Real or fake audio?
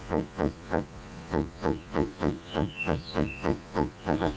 fake